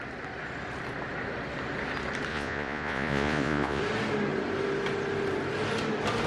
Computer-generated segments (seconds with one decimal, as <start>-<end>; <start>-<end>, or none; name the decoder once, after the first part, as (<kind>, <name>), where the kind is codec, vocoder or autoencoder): 2.3-3.8 (vocoder, Vocos)